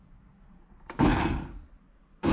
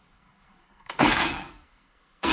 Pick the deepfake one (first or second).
second